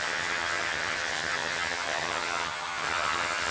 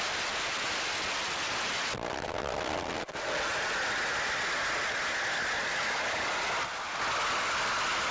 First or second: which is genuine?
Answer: second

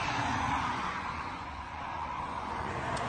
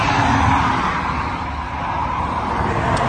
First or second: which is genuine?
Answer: second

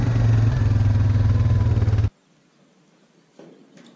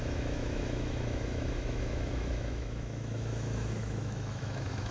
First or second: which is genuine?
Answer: first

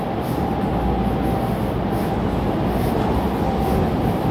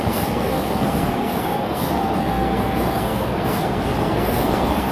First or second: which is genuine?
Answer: first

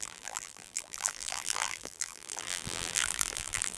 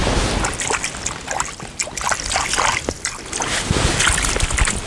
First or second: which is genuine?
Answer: second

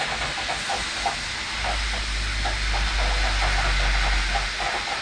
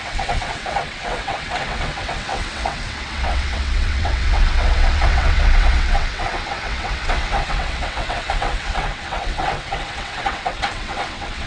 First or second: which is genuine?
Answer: first